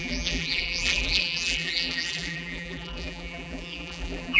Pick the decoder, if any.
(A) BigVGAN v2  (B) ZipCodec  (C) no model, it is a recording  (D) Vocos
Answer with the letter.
A